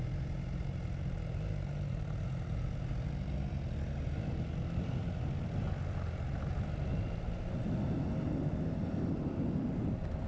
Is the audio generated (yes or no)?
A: no